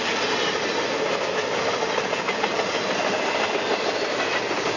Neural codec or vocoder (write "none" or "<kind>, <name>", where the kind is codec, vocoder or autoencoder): none